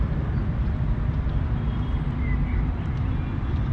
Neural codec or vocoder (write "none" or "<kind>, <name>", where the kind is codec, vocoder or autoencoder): vocoder, BigVGAN v2